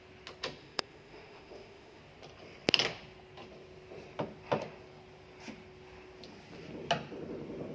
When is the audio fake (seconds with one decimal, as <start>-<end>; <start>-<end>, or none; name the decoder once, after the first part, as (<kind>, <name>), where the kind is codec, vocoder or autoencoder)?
0.6-2.0 (autoencoder, DAC-VAE)